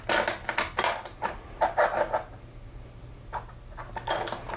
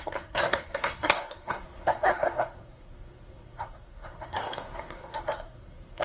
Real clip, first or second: first